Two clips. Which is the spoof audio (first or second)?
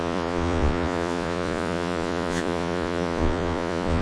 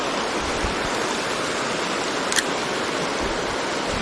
first